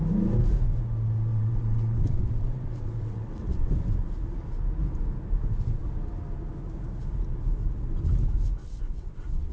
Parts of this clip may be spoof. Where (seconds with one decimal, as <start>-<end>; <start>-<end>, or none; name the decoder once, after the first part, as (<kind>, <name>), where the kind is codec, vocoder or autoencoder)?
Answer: 1.3-3.7 (vocoder, WaveNeXt); 8.6-9.5